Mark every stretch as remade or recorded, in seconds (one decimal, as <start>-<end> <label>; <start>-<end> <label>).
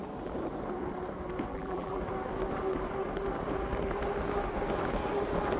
0.0-1.5 recorded; 1.5-2.0 remade; 2.0-5.6 recorded